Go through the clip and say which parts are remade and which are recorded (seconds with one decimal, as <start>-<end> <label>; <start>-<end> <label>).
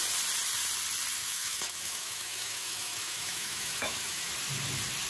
0.0-1.2 recorded; 1.2-4.3 remade; 4.3-5.1 recorded